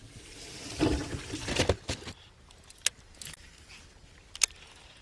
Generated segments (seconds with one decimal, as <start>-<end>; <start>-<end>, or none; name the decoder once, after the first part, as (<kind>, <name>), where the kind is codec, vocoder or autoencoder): none